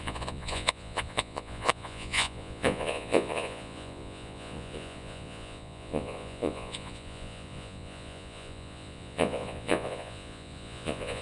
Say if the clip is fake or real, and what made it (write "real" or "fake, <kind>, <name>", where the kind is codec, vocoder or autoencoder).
fake, vocoder, Vocos